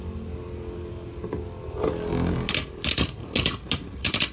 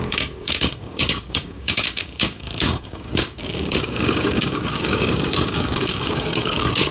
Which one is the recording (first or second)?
first